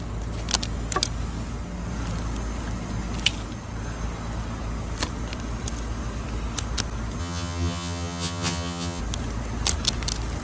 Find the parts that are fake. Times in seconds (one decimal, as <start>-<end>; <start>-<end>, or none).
7.2-9.0